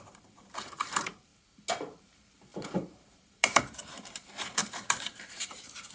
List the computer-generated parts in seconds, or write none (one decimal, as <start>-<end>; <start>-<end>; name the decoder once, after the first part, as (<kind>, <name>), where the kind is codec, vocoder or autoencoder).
0.0-1.3 (vocoder, BigVGAN v2); 2.0-5.9